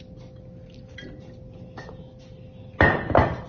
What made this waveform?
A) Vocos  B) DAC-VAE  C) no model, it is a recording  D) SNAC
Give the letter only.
C